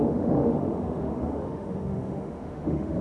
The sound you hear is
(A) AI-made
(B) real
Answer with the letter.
A